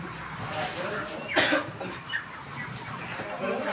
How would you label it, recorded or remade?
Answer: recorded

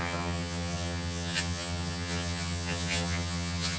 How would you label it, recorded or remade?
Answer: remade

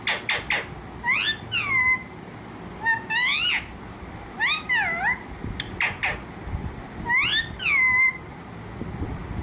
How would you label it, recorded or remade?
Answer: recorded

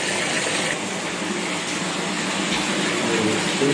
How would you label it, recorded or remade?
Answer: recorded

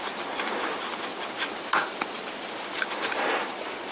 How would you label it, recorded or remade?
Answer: remade